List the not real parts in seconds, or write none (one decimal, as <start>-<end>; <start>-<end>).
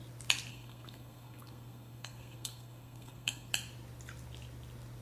0.5-3.5